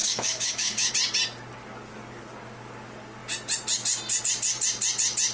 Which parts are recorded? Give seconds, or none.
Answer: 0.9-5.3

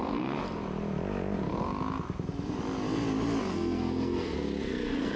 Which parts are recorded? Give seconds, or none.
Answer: 0.4-3.5

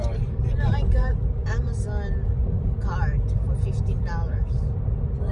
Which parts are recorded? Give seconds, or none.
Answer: 1.1-4.3